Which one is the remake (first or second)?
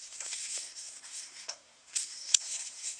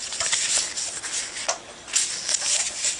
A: first